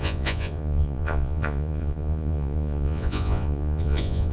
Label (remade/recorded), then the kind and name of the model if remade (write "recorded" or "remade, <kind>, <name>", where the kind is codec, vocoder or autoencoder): remade, vocoder, Vocos